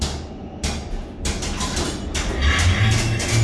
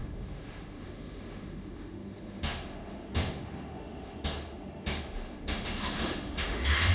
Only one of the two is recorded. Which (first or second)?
first